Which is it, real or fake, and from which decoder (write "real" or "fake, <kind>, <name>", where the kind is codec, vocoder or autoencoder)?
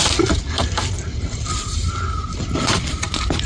real